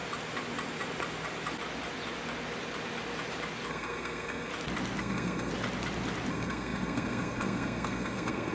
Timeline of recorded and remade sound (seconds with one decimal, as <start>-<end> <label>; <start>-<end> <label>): 0.0-3.7 recorded; 3.7-4.5 remade; 4.5-5.0 recorded; 5.0-5.5 remade; 5.5-6.3 recorded; 6.3-8.5 remade